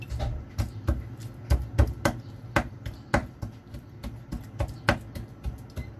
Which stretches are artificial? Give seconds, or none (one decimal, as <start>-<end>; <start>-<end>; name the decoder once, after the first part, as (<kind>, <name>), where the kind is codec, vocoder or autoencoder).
3.2-4.3 (vocoder, BigVGAN v2)